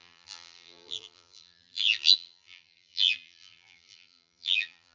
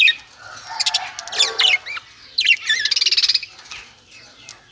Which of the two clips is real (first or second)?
second